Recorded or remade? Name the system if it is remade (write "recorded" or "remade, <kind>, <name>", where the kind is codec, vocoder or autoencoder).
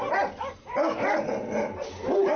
recorded